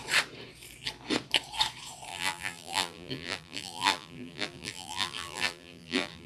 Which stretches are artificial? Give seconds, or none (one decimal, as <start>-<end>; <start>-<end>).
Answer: 2.1-6.3